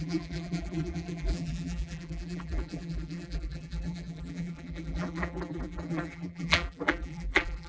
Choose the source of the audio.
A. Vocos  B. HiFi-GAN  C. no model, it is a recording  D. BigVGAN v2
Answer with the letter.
D